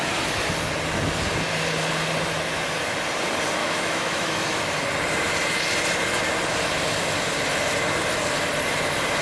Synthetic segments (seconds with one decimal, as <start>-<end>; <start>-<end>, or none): 3.6-4.6